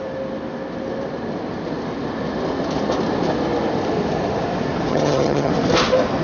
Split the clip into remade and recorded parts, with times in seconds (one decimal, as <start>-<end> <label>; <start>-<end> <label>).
0.0-4.9 recorded; 4.9-5.5 remade; 5.5-6.2 recorded